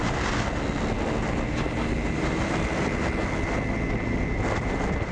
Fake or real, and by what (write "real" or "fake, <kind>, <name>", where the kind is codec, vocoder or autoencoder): real